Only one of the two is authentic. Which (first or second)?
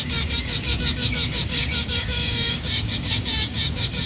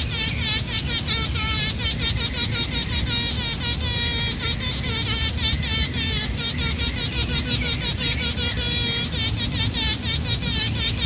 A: second